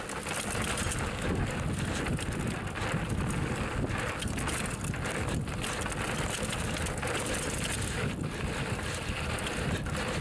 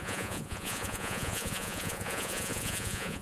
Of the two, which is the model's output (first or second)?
second